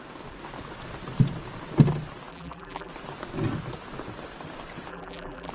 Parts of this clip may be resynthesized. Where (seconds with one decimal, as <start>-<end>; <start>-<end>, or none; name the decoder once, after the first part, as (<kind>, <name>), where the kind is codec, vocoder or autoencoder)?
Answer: 2.3-2.9 (vocoder, BigVGAN v2); 4.9-5.5